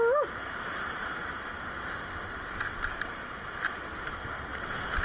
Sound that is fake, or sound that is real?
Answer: real